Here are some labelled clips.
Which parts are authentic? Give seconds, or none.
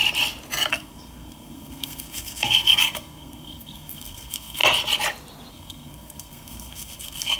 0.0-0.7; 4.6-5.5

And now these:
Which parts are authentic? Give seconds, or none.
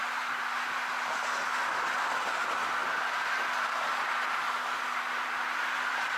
0.0-6.2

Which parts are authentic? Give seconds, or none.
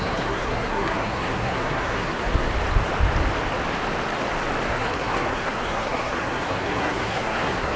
2.5-4.7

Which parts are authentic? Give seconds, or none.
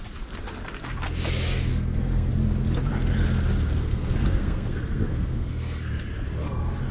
0.0-1.7; 2.3-3.8; 5.9-6.9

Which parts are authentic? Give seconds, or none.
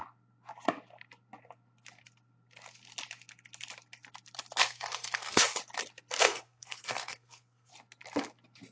0.0-4.6; 5.6-6.2; 7.7-8.7